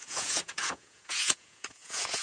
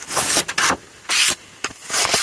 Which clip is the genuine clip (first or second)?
second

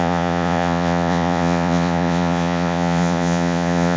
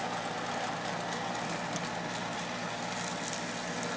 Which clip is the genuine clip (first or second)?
second